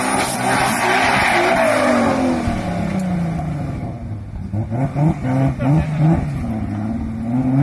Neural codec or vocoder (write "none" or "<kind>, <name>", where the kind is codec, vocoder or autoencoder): none